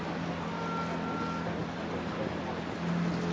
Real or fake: real